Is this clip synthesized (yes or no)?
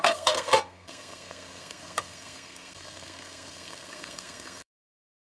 yes